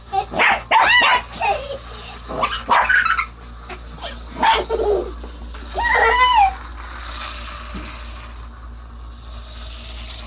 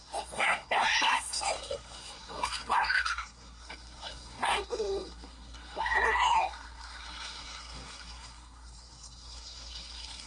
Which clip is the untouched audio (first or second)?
first